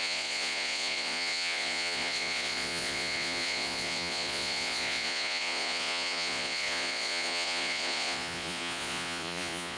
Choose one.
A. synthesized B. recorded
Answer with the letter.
A